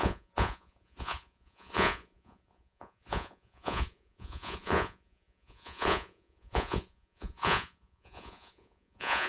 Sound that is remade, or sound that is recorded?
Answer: remade